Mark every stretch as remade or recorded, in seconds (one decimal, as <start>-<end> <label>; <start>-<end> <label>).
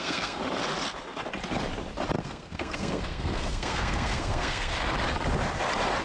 0.0-0.4 remade; 0.4-2.2 recorded; 2.2-4.7 remade; 4.7-6.0 recorded